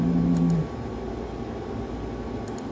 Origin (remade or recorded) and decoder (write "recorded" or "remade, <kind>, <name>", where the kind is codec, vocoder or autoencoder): recorded